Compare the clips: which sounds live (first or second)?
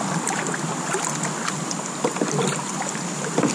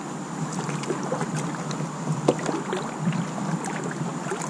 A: second